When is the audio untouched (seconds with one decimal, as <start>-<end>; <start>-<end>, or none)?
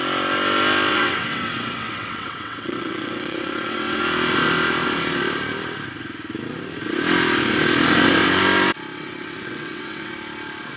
0.0-0.9; 4.0-8.9; 10.1-10.8